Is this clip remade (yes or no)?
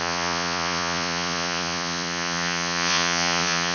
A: yes